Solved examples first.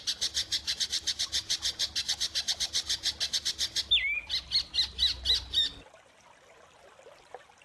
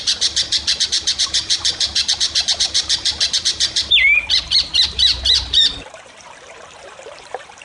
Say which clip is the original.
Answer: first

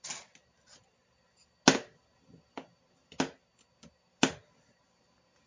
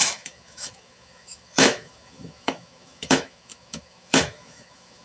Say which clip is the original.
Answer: first